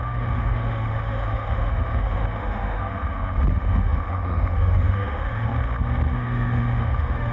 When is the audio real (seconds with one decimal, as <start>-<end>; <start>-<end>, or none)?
2.9-3.5; 5.5-6.1